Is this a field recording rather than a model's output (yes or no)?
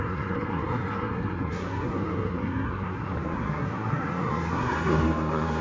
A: no